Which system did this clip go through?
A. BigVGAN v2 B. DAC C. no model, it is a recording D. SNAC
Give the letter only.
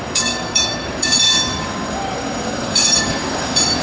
B